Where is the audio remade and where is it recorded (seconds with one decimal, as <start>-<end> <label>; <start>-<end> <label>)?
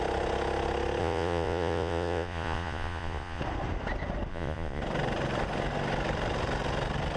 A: 0.0-1.0 recorded; 1.0-3.4 remade; 3.4-4.3 recorded; 4.3-4.8 remade; 4.8-7.2 recorded